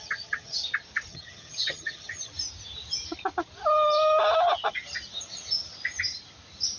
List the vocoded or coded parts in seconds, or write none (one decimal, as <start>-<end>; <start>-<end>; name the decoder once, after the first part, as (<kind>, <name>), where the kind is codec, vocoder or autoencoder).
0.0-0.6 (vocoder, HiFi-GAN); 1.1-2.3